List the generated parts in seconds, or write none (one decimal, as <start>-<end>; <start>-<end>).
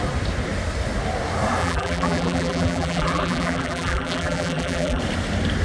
1.6-5.0